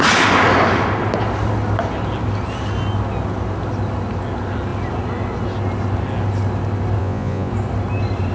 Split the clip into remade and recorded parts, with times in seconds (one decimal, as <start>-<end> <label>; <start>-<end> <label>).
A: 0.0-7.0 recorded; 7.0-7.5 remade; 7.5-8.3 recorded